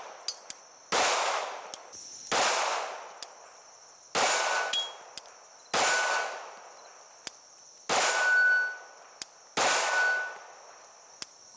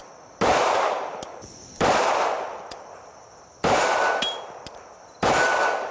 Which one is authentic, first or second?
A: first